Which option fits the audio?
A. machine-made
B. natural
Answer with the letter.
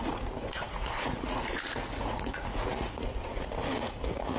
A